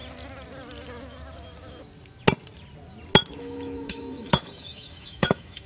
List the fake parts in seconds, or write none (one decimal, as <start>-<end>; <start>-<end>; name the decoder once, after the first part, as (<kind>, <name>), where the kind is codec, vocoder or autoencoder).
3.4-5.7 (autoencoder, DAC-VAE)